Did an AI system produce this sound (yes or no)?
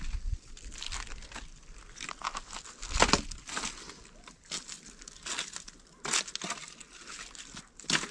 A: no